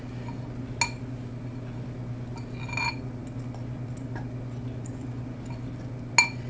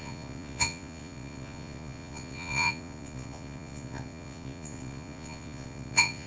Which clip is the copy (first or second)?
second